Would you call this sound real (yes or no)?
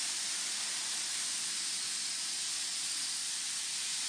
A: no